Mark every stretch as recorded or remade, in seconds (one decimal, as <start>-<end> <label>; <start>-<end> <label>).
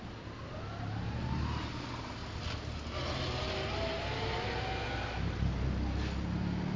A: 0.0-6.8 recorded